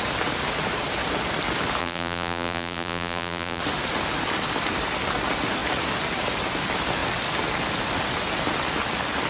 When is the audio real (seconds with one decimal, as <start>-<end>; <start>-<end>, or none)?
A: 0.0-1.8; 3.6-9.3